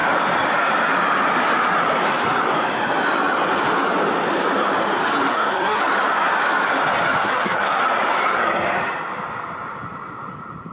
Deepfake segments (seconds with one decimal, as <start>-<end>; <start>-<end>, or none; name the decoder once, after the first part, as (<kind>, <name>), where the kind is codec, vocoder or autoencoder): 5.3-5.8 (codec, SNAC); 7.2-7.8